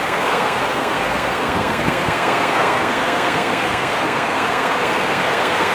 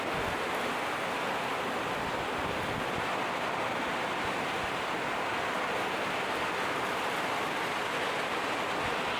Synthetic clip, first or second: first